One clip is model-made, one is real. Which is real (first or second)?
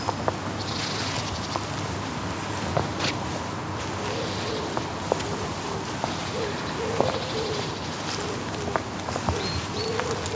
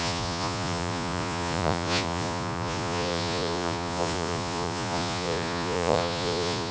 first